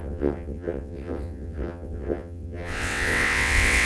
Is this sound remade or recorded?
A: remade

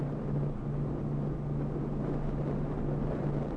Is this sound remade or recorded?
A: recorded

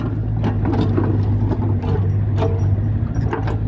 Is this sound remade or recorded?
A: recorded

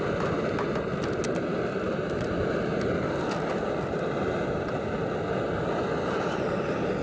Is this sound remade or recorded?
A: recorded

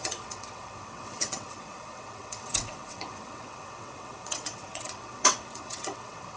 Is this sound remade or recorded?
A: remade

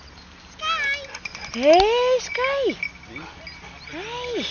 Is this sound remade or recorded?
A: recorded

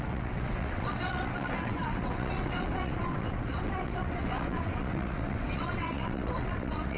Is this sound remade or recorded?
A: remade